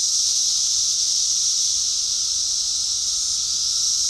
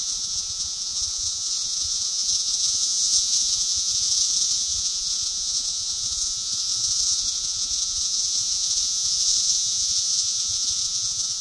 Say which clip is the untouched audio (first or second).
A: first